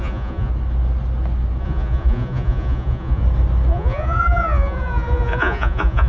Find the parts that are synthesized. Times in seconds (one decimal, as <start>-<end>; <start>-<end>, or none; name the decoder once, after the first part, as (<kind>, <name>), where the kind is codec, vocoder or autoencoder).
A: 0.0-0.5 (vocoder, Vocos); 1.6-3.2; 3.7-6.1